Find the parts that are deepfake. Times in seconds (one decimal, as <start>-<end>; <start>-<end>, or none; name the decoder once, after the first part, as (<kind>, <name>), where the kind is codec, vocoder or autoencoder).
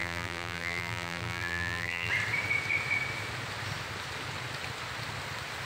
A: 0.0-2.1 (vocoder, BigVGAN v2)